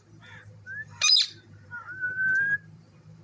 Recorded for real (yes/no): no